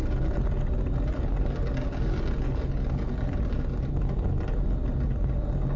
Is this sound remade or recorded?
recorded